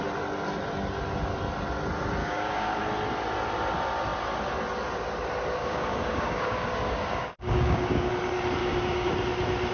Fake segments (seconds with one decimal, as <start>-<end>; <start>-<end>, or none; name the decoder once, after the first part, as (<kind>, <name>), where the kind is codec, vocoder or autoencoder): 2.2-2.8 (codec, DAC); 5.6-8.1; 8.6-9.1